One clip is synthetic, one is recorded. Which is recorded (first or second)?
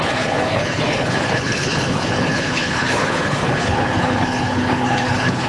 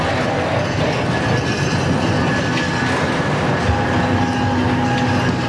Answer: second